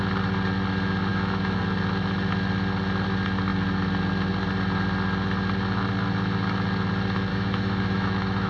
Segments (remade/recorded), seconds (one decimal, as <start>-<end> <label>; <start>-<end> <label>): 0.0-1.1 recorded; 1.1-1.6 remade; 1.6-7.3 recorded; 7.3-8.5 remade